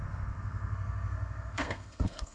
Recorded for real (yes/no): no